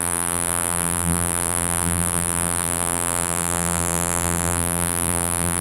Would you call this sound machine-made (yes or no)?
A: yes